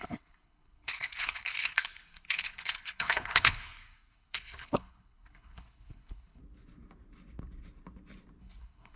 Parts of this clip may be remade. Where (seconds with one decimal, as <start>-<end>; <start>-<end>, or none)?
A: 0.0-6.4; 8.4-9.0